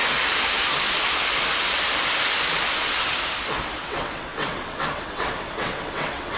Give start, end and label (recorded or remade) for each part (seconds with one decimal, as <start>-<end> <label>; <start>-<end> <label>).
0.0-3.8 recorded; 3.8-6.4 remade